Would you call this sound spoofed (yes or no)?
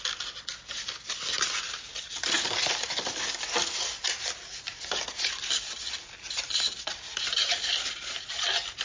no